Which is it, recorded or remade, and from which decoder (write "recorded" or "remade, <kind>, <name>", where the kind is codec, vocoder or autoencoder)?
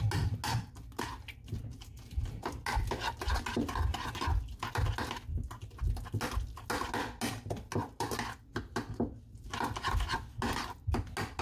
recorded